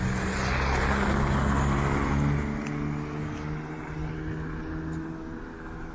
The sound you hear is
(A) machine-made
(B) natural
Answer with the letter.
B